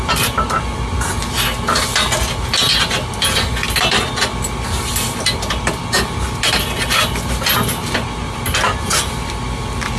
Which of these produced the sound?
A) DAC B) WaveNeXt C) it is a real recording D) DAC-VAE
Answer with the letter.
C